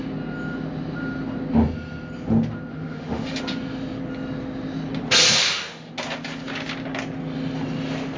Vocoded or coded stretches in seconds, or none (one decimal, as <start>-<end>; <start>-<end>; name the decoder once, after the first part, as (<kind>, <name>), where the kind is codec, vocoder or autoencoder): 2.7-3.4 (autoencoder, DAC-VAE); 5.4-5.9